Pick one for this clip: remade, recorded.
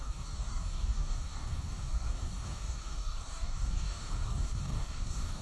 remade